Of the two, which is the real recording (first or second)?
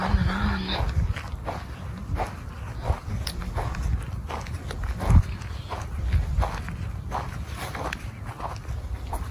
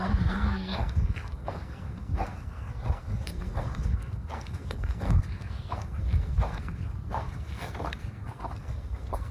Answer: first